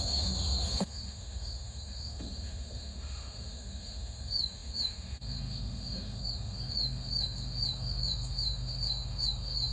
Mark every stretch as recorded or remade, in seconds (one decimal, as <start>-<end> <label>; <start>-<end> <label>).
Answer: 0.0-9.7 remade

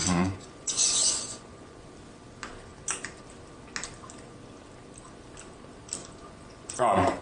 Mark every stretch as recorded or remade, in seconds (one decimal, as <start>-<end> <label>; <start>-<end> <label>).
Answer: 0.0-1.9 remade; 1.9-6.0 recorded; 6.0-7.2 remade

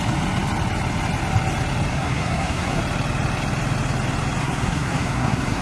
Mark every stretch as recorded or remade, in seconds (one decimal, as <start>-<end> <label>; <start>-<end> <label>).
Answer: 0.0-1.9 recorded; 1.9-2.8 remade; 2.8-4.4 recorded; 4.4-5.6 remade

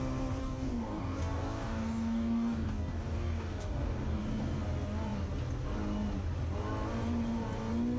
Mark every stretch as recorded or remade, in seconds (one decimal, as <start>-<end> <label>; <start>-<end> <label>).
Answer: 0.0-0.4 recorded; 0.4-4.2 remade; 4.2-8.0 recorded

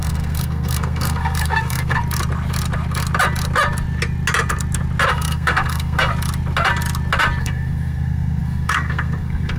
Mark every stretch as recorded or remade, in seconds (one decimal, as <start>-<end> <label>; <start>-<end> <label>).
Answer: 0.0-2.0 remade; 2.0-5.1 recorded; 5.1-6.1 remade; 6.1-7.4 recorded; 7.4-9.6 remade

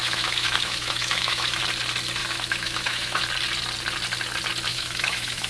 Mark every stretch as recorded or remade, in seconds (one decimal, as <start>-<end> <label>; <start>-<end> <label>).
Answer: 0.0-1.6 remade; 1.6-2.2 recorded; 2.2-3.2 remade; 3.2-4.7 recorded; 4.7-5.5 remade

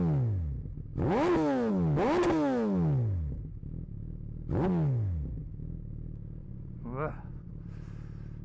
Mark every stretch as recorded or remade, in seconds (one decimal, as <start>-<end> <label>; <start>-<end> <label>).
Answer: 0.0-6.4 recorded; 6.4-7.5 remade; 7.5-8.4 recorded